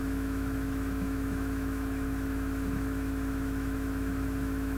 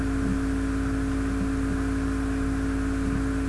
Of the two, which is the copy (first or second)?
first